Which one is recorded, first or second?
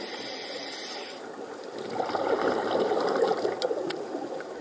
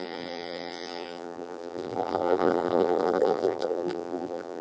first